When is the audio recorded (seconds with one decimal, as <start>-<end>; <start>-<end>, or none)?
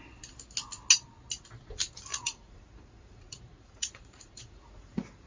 0.0-2.1